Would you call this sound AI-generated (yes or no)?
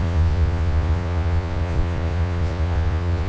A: yes